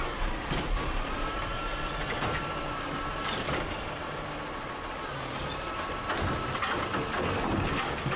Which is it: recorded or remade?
recorded